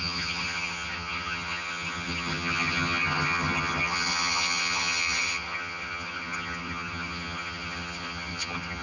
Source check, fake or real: fake